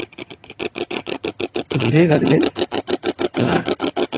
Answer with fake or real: fake